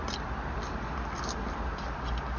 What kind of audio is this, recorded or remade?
recorded